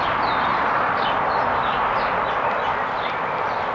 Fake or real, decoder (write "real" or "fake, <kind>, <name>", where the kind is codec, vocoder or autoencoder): real